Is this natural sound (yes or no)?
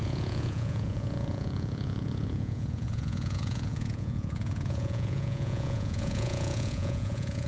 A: no